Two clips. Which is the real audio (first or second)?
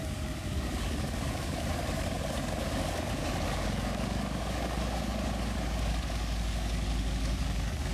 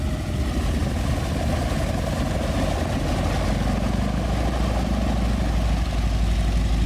second